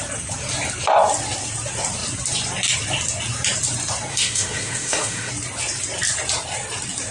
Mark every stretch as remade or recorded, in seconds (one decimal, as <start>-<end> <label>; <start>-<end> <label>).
0.0-4.1 recorded; 4.1-5.3 remade; 5.3-7.1 recorded